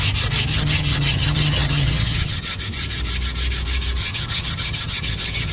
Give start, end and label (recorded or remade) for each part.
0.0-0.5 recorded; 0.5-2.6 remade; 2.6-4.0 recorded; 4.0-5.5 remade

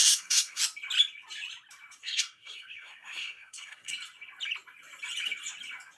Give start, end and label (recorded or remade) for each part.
0.0-0.6 remade; 0.6-2.0 recorded; 2.0-3.9 remade; 3.9-6.0 recorded

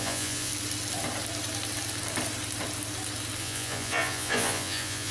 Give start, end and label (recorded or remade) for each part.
0.0-0.5 remade; 0.5-3.4 recorded; 3.4-5.1 remade

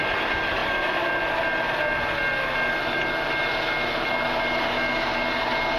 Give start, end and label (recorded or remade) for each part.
0.0-5.8 recorded

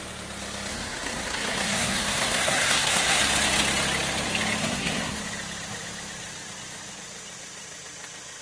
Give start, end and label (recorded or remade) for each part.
0.0-0.7 recorded; 0.7-3.2 remade; 3.2-4.6 recorded; 4.6-5.2 remade; 5.2-8.4 recorded

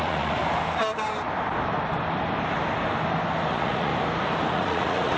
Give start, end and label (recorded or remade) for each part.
0.0-0.4 remade; 0.4-3.5 recorded; 3.5-3.9 remade; 3.9-4.5 recorded; 4.5-5.2 remade

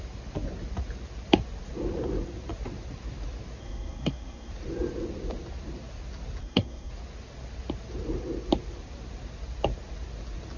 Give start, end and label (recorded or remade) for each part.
0.0-3.6 recorded; 3.6-4.5 remade; 4.5-6.4 recorded; 6.4-6.9 remade; 6.9-10.6 recorded

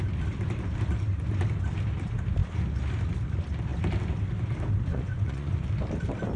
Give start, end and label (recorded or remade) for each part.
0.0-4.9 recorded; 4.9-5.6 remade; 5.6-6.4 recorded